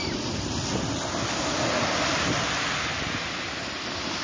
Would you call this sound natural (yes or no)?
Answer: yes